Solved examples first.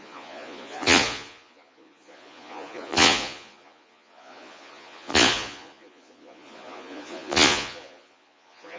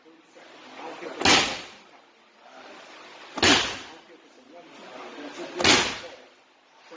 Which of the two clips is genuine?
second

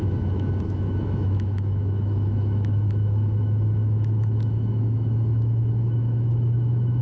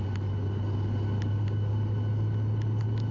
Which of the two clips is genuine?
second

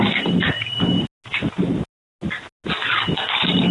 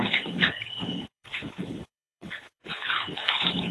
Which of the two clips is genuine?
first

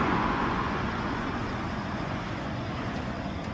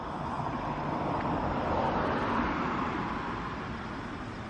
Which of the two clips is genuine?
second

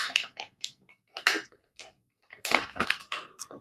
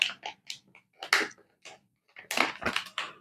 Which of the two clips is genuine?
second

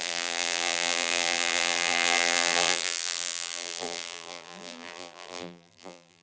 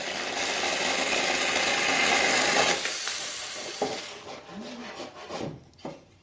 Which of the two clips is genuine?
second